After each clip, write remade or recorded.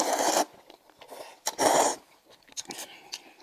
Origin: recorded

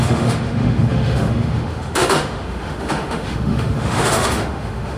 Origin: remade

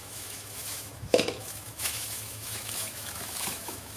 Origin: remade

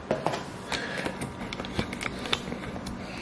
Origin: recorded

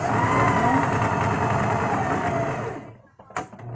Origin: recorded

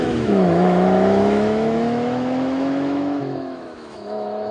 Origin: remade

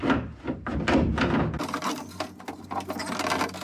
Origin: recorded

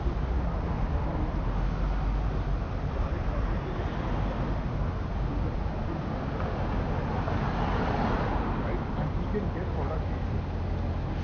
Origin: recorded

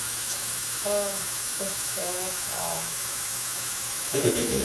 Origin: remade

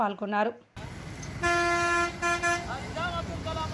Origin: recorded